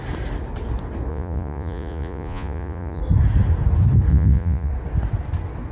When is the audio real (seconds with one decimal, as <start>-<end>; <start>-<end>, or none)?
0.0-1.1; 3.0-4.1; 4.7-5.7